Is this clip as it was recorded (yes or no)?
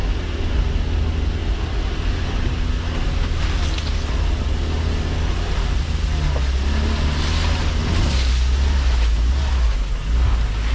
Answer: yes